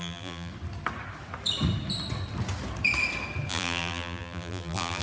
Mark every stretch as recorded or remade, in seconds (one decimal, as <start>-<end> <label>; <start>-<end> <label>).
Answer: 0.0-0.5 remade; 0.5-3.5 recorded; 3.5-5.0 remade